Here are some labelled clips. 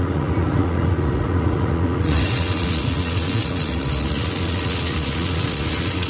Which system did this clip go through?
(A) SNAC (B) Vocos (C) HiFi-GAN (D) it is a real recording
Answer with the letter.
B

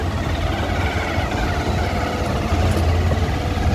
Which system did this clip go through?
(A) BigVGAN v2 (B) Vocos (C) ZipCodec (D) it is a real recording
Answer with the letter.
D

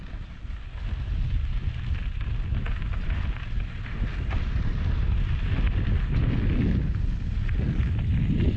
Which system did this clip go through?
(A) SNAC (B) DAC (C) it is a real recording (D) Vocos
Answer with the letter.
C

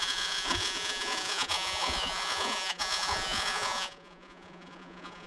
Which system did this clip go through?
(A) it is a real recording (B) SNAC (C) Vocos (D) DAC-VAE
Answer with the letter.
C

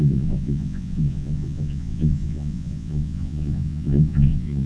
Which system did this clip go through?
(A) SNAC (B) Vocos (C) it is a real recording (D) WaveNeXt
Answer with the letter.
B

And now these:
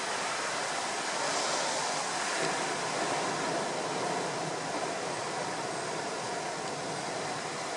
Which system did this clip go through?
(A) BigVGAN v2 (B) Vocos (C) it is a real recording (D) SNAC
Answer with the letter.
C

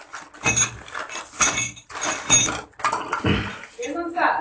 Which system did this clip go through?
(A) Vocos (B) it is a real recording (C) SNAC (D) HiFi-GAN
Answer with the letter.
B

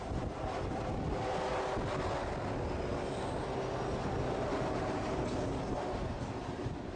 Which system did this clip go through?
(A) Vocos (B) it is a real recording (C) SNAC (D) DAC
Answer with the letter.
B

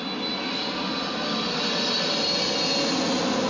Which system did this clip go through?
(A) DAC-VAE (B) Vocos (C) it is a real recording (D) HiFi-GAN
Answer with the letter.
C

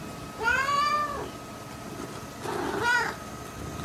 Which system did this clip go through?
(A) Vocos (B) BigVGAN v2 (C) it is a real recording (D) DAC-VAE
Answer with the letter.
C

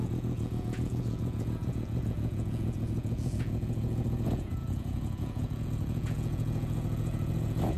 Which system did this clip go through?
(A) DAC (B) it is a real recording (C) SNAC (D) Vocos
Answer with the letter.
D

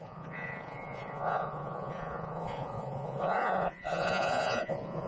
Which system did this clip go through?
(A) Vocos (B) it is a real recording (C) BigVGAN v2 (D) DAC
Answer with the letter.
A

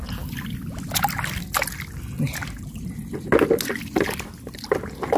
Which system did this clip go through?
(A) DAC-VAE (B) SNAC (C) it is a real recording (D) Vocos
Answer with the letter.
C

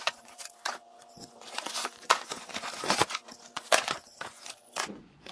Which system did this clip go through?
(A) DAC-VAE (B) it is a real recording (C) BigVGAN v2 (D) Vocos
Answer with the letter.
D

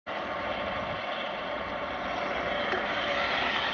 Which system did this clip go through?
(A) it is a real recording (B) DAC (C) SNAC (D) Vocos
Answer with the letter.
A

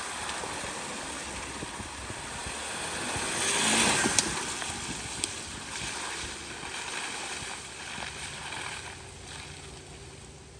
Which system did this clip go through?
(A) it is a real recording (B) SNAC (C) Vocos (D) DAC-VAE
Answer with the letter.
A